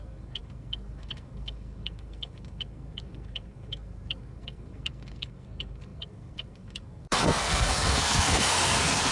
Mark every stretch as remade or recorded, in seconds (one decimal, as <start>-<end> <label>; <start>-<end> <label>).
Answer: 0.0-9.1 remade